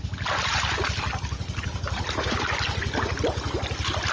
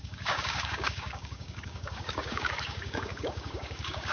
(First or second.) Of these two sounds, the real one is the first